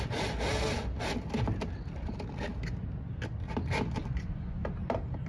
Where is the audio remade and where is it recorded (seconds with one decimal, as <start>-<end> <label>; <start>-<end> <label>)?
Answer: 0.0-4.0 recorded; 4.0-4.6 remade; 4.6-5.3 recorded